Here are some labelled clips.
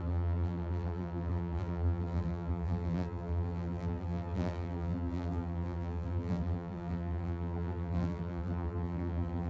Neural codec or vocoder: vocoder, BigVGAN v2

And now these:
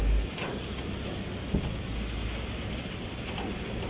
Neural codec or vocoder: none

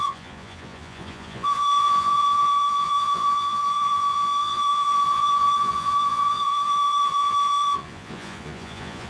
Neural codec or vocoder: vocoder, Vocos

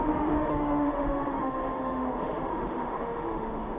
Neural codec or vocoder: autoencoder, DAC-VAE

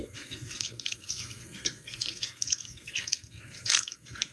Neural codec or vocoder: codec, SNAC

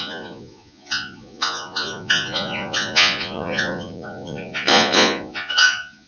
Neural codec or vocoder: vocoder, Vocos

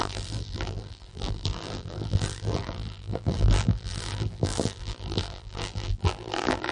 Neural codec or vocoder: vocoder, BigVGAN v2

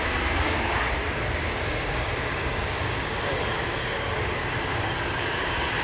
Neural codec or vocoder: codec, DAC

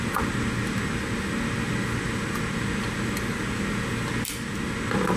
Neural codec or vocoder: none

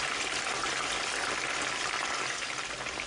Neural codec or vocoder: none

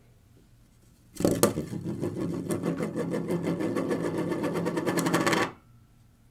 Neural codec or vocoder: none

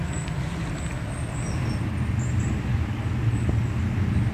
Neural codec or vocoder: none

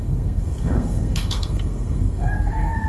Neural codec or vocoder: codec, SNAC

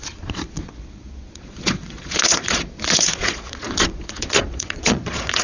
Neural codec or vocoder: vocoder, Vocos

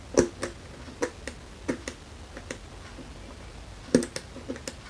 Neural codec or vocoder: none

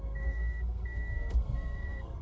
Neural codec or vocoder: codec, SNAC